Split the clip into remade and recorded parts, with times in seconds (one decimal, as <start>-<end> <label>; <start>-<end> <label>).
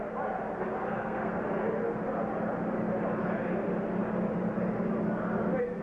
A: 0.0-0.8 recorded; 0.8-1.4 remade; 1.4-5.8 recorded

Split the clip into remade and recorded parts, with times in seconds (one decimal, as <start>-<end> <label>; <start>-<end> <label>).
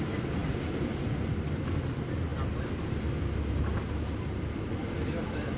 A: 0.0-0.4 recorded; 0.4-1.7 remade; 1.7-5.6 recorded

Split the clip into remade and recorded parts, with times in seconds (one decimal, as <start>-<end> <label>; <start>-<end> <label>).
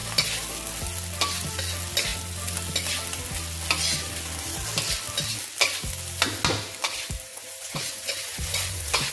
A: 0.0-7.3 recorded; 7.3-9.1 remade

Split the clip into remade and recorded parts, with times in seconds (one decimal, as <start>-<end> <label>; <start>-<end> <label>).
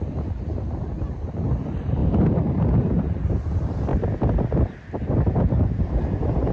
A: 0.0-6.5 recorded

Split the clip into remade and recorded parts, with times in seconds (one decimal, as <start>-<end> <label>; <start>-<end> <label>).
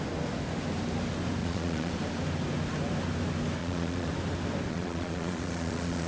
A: 0.0-1.4 recorded; 1.4-1.9 remade; 1.9-3.6 recorded; 3.6-4.1 remade; 4.1-4.7 recorded; 4.7-6.1 remade